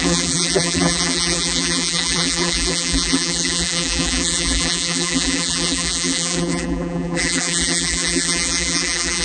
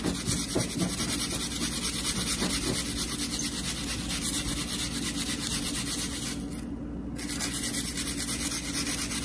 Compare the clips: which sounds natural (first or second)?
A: second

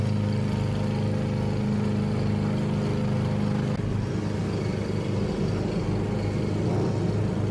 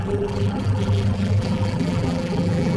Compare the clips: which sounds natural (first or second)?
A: first